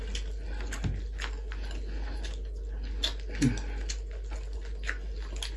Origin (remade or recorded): recorded